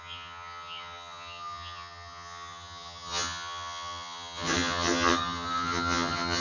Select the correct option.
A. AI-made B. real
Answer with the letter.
A